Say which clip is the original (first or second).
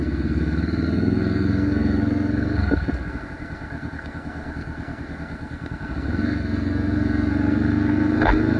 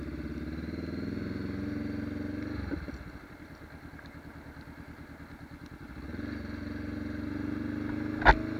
second